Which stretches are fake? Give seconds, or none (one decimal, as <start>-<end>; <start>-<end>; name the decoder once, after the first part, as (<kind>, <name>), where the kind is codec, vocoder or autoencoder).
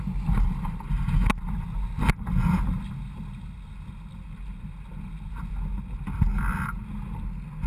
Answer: none